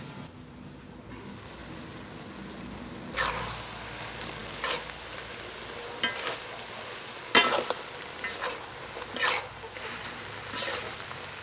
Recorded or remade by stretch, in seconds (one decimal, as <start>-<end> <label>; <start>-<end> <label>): 0.0-11.4 recorded